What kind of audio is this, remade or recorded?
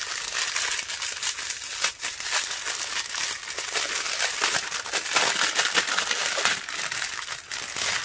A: recorded